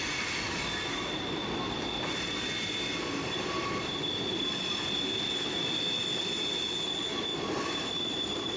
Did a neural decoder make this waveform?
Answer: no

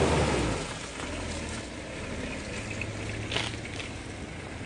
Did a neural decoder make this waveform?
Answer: no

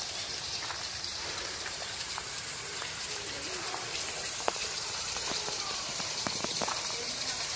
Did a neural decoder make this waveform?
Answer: yes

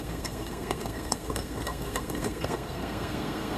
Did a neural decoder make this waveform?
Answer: yes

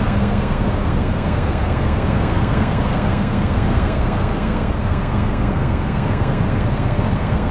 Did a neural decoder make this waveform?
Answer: yes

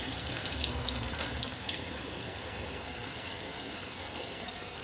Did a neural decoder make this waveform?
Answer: yes